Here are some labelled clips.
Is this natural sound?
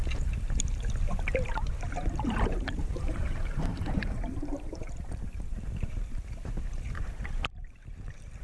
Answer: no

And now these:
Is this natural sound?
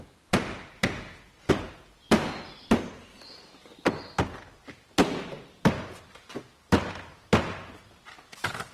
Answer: yes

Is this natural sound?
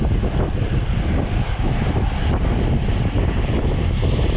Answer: yes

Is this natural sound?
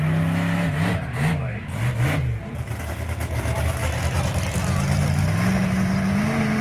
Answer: yes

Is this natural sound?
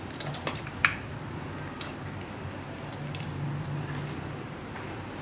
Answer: no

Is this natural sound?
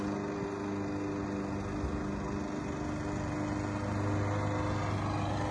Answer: yes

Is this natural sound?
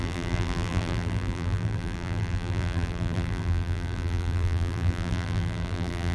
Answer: no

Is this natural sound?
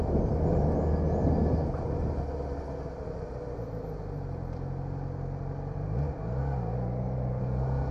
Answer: yes